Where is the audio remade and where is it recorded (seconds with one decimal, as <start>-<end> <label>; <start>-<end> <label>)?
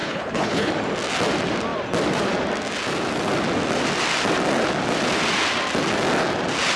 0.0-0.7 remade; 0.7-6.8 recorded